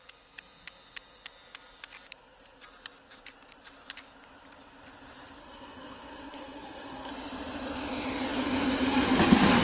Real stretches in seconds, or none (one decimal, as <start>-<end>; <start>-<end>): 0.0-5.4; 7.1-9.6